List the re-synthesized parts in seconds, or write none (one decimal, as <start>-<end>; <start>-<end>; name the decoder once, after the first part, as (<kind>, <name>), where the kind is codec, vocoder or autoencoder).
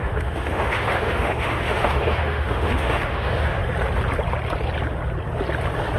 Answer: 0.0-3.6 (autoencoder, DAC-VAE)